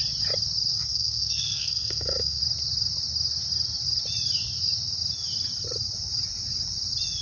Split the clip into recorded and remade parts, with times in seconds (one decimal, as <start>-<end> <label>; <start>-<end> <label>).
0.0-0.7 recorded; 0.7-2.4 remade; 2.4-7.2 recorded